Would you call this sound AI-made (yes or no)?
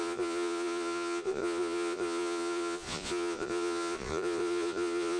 yes